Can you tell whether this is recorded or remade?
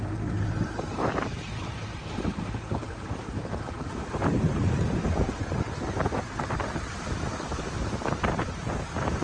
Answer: remade